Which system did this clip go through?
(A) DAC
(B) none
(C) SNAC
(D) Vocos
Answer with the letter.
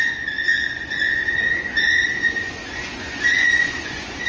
D